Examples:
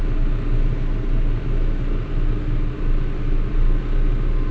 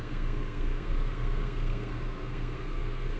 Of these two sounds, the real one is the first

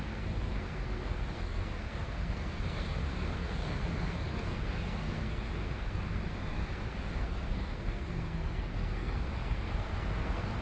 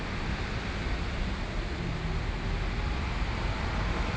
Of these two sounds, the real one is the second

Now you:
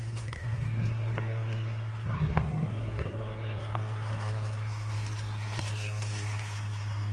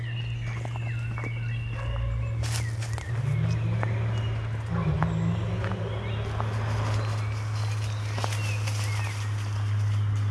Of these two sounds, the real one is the second